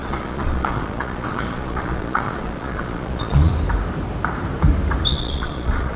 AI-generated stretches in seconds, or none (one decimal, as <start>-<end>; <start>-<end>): 0.0-3.5; 5.1-6.0